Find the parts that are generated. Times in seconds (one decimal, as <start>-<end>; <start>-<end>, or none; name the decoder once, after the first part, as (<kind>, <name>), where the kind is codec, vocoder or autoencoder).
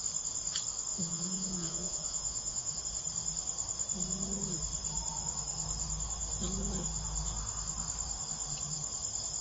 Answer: 0.9-2.8 (vocoder, Vocos)